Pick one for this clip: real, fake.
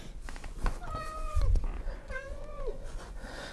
fake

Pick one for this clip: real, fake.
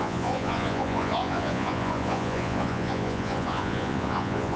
fake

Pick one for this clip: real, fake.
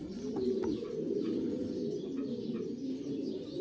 real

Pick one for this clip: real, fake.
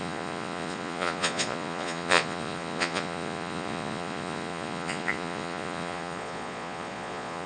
fake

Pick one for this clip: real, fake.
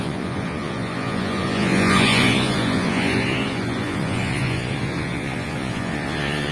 fake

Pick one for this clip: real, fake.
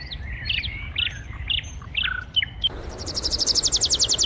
real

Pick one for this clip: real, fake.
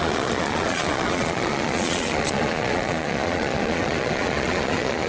fake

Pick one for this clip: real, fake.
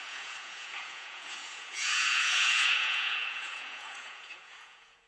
fake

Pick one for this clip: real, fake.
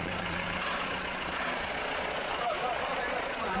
fake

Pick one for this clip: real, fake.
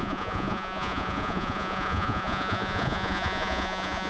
fake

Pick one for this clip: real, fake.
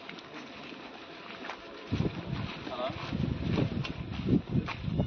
real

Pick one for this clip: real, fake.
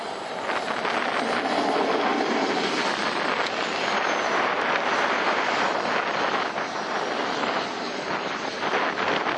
real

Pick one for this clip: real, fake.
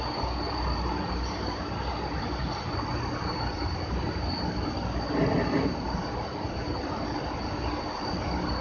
real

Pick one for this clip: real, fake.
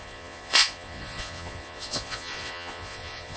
fake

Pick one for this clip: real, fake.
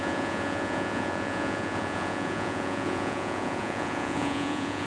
fake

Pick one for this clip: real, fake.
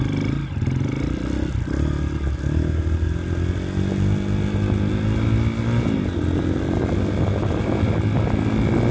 real